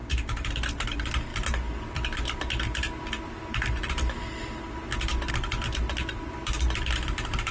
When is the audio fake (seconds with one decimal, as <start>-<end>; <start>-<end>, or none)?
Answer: none

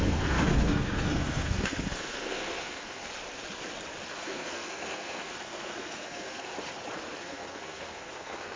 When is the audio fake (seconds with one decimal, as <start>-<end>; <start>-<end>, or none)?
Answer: 0.0-3.1; 4.1-6.5; 7.2-8.6